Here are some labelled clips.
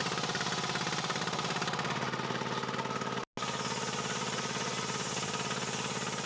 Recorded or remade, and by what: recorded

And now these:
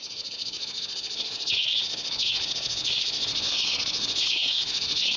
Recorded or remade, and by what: remade, codec, SNAC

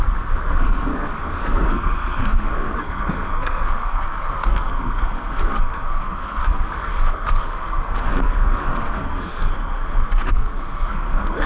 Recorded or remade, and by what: remade, codec, SNAC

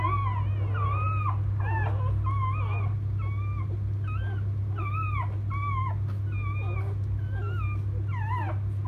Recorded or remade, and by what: recorded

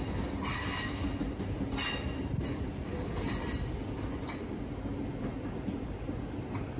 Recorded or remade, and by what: recorded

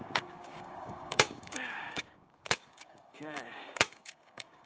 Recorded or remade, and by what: remade, codec, DAC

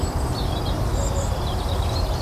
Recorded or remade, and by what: remade, vocoder, BigVGAN v2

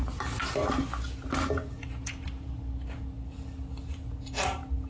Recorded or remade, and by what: recorded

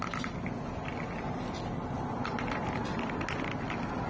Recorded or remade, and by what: recorded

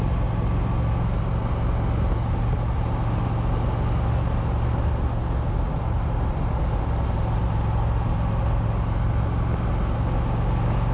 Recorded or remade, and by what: recorded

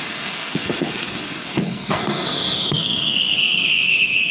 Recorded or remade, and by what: remade, codec, SNAC